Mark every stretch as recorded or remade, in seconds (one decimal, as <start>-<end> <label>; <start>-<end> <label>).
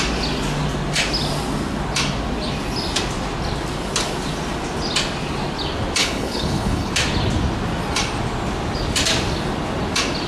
0.0-6.0 recorded; 6.0-6.9 remade; 6.9-10.3 recorded